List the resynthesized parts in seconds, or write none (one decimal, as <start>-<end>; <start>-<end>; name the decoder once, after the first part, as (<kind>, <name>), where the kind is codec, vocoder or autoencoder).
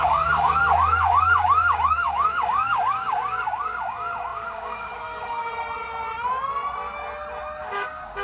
0.0-5.5 (codec, DAC); 7.6-8.2